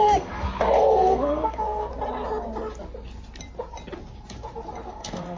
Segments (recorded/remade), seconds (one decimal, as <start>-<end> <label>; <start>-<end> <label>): 0.0-1.9 remade; 1.9-4.9 recorded; 4.9-5.4 remade